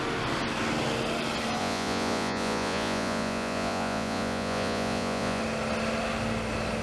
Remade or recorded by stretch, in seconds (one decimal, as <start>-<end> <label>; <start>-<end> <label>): 0.0-1.6 recorded; 1.6-5.4 remade; 5.4-6.8 recorded